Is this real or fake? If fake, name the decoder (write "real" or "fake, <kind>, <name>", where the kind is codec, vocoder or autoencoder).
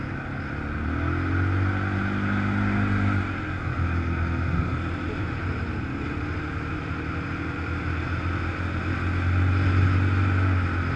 real